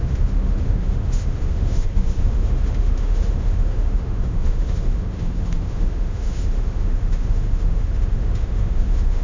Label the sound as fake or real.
fake